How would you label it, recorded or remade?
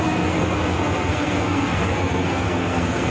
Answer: remade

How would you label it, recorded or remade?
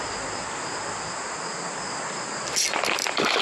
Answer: recorded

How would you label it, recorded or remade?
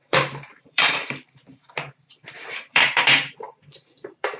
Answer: remade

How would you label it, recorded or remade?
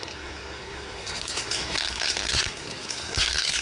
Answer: remade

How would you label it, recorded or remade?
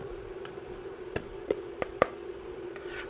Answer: remade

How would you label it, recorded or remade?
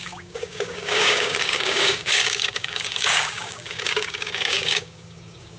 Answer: remade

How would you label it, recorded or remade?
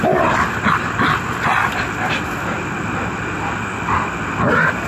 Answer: recorded